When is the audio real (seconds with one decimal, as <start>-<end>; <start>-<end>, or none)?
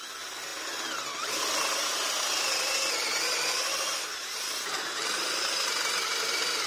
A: 0.0-6.7